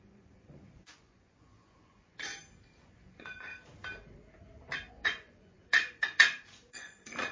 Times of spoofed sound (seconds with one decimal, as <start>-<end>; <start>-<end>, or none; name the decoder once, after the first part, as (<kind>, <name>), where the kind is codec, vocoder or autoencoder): 0.0-2.3 (vocoder, Vocos); 2.8-3.5; 4.9-7.3